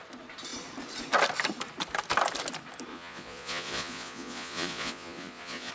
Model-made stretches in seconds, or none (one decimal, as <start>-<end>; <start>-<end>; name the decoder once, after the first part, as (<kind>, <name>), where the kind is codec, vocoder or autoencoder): 2.9-5.7 (vocoder, Vocos)